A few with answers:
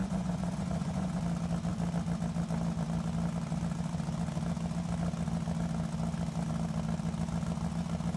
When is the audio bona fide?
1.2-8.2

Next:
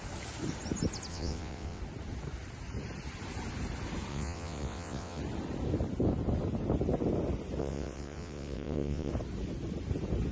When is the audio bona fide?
0.0-1.1; 1.8-4.1; 5.2-7.6; 9.1-10.3

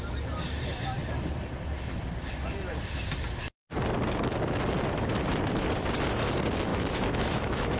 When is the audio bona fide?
0.0-6.7

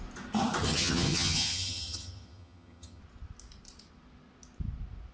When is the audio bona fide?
0.0-0.6; 3.0-5.1

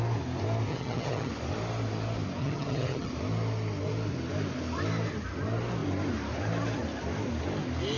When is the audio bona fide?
0.0-0.7; 1.3-2.4; 3.1-8.0